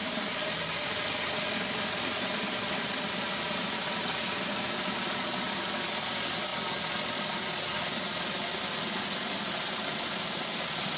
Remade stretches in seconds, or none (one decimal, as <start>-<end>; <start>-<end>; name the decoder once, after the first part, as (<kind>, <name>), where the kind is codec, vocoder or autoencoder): none